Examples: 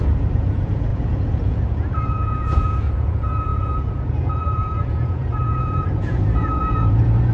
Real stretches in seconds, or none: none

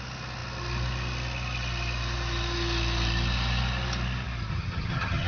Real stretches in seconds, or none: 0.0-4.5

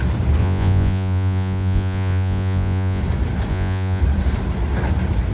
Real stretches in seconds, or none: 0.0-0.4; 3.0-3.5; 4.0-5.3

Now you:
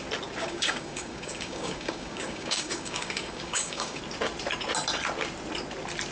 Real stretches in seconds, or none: 0.0-0.4; 4.0-6.1

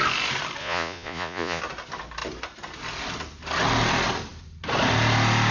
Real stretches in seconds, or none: 0.0-0.6; 1.6-5.5